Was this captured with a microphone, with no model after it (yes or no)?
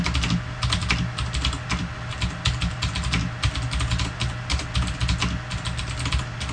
yes